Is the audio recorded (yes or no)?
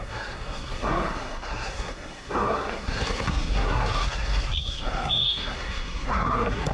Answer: no